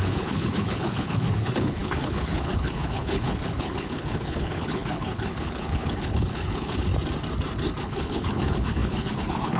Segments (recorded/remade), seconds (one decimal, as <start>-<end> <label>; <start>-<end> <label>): 0.0-6.9 remade; 6.9-7.8 recorded; 7.8-9.6 remade

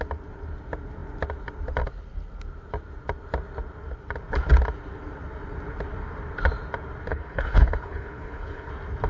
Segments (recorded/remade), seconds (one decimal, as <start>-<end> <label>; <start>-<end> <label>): 0.0-7.1 recorded; 7.1-8.7 remade; 8.7-9.1 recorded